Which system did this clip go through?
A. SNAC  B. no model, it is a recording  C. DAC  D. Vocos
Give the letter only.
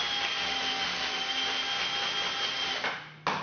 B